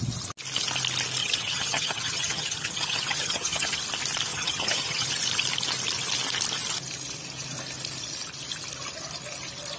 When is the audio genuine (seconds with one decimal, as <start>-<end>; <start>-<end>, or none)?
0.0-1.2; 3.8-4.3; 5.1-9.8